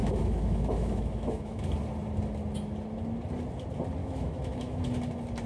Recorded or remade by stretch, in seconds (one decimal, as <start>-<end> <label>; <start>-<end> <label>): 0.0-1.7 remade; 1.7-4.0 recorded; 4.0-4.8 remade; 4.8-5.5 recorded